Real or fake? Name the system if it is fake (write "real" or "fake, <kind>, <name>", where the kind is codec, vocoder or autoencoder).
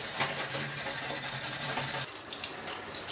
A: real